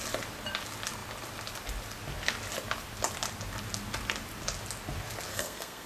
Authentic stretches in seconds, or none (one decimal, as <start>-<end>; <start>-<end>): 0.0-5.3